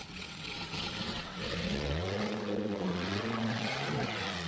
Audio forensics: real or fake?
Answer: fake